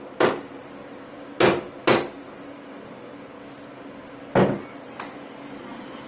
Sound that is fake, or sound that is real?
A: real